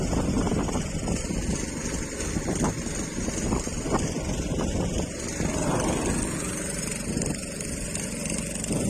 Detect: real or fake real